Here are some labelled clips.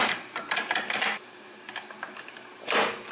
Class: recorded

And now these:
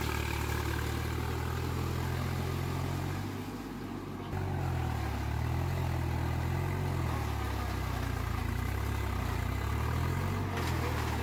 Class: recorded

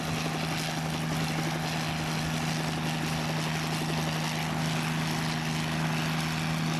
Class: recorded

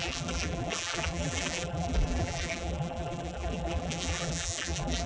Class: remade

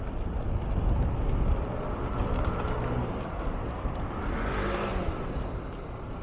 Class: recorded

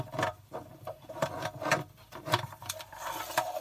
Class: remade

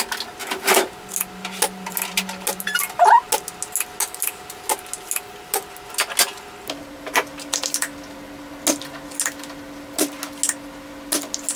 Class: recorded